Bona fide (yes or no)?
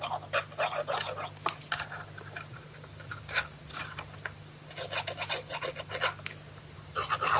yes